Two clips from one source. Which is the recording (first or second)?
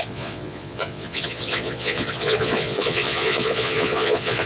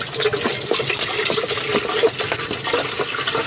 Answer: second